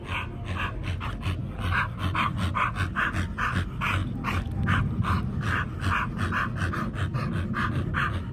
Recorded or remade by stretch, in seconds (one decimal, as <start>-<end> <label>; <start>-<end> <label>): 0.0-8.3 recorded